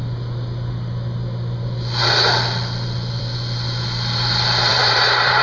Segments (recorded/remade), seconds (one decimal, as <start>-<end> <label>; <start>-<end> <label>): 0.0-4.7 recorded; 4.7-5.4 remade